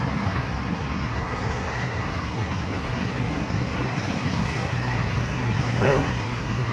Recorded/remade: remade